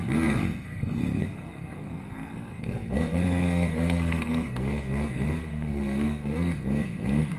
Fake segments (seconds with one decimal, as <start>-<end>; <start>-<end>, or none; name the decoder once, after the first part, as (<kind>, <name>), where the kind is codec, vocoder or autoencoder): 0.0-7.4 (codec, SNAC)